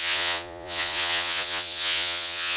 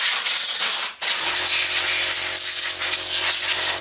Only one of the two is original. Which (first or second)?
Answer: second